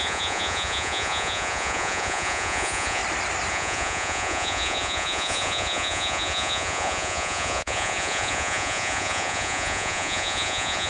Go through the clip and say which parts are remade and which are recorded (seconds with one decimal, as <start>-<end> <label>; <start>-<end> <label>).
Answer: 0.0-3.0 remade; 3.0-3.5 recorded; 3.5-10.9 remade